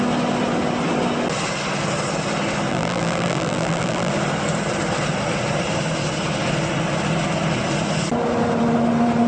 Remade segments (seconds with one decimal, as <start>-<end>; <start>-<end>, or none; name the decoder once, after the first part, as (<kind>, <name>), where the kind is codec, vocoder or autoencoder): 2.7-4.1 (vocoder, BigVGAN v2)